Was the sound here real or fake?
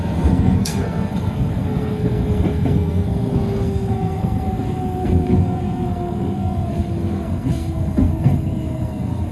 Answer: fake